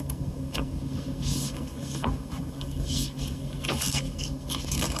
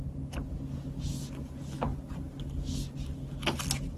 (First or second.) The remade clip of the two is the first